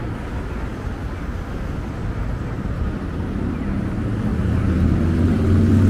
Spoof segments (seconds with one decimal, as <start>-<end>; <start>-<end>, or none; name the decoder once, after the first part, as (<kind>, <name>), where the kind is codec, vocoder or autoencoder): none